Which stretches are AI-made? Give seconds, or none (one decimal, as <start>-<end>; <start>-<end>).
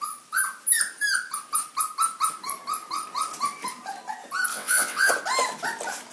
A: 4.5-5.1